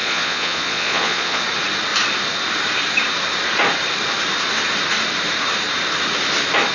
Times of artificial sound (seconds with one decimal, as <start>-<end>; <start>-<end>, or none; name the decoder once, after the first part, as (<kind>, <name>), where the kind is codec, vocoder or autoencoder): 0.0-1.4 (vocoder, Vocos)